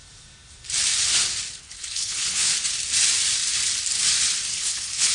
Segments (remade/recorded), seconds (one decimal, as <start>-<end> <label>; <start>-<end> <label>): 0.0-1.6 recorded; 1.6-2.5 remade; 2.5-4.5 recorded; 4.5-5.1 remade